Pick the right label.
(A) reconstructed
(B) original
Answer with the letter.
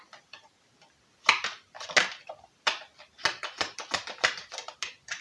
B